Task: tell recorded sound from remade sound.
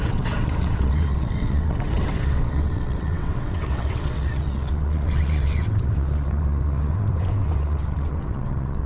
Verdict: remade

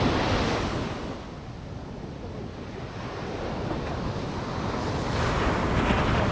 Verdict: recorded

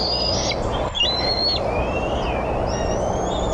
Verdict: recorded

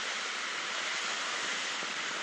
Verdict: recorded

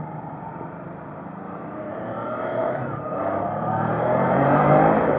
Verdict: remade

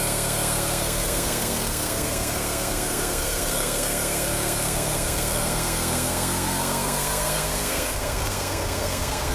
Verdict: remade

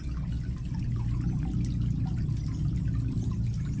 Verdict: recorded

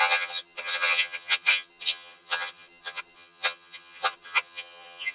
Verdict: remade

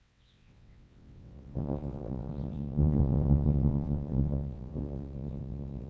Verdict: remade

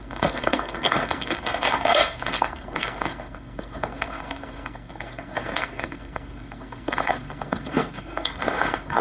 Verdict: remade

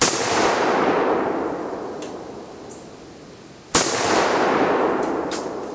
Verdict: recorded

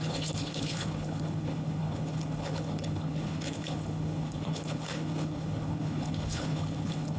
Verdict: remade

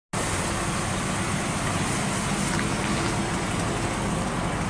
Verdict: recorded